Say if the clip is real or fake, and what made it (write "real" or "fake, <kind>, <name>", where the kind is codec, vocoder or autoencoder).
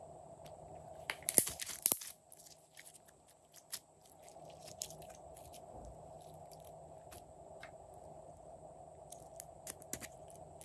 real